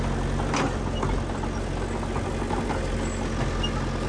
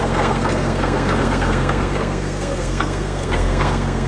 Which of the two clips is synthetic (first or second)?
second